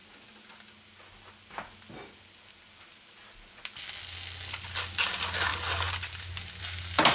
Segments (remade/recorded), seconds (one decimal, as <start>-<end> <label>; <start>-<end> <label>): 0.0-7.1 recorded